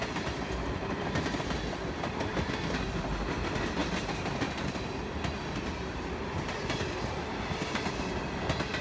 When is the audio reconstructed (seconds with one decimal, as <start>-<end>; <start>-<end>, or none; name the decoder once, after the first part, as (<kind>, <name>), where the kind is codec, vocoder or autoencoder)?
3.8-4.5 (vocoder, BigVGAN v2)

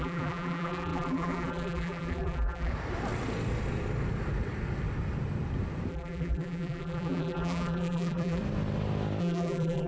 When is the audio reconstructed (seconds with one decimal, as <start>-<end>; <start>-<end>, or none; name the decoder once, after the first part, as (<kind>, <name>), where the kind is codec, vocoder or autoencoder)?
0.0-2.7 (vocoder, BigVGAN v2); 5.9-8.4; 9.2-9.9

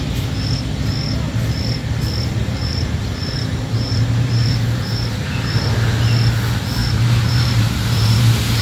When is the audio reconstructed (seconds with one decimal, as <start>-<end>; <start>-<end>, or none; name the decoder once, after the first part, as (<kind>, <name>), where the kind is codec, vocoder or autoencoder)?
2.4-5.6 (vocoder, BigVGAN v2); 6.8-8.6

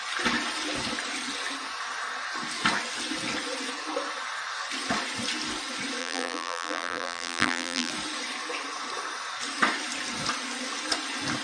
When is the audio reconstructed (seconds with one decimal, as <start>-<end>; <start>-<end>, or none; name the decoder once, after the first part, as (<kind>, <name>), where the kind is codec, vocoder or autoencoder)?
6.0-7.9 (vocoder, BigVGAN v2)